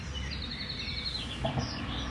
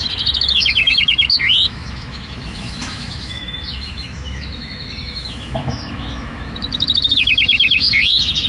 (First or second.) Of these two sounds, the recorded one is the first